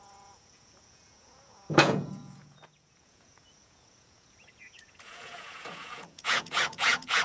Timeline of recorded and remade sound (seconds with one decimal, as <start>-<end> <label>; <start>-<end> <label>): 0.0-7.2 remade